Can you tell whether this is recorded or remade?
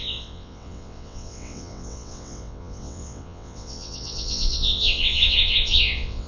remade